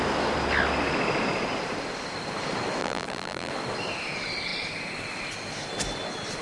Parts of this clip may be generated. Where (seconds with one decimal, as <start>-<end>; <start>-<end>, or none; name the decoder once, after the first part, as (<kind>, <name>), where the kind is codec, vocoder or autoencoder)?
2.8-3.5 (vocoder, BigVGAN v2)